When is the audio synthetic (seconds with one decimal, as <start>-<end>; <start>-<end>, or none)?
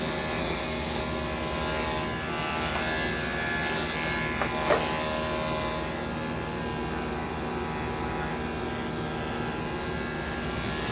0.4-1.0